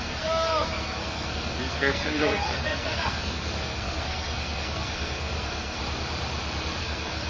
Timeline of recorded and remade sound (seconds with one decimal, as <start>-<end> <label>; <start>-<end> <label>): 0.0-5.8 remade; 5.8-6.8 recorded; 6.8-7.3 remade